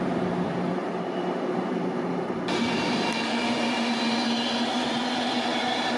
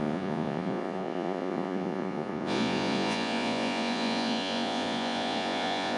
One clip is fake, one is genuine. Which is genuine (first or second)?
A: first